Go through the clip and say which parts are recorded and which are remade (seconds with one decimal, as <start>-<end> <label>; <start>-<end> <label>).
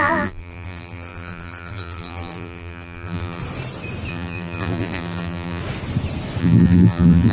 0.0-3.4 remade; 3.4-4.1 recorded; 4.1-5.6 remade; 5.6-6.4 recorded; 6.4-7.3 remade